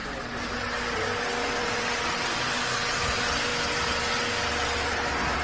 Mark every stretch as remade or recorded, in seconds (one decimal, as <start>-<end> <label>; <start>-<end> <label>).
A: 0.0-5.4 recorded